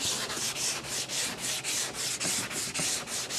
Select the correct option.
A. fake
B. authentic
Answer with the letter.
B